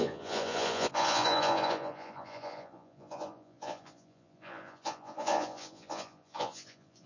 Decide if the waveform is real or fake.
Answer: fake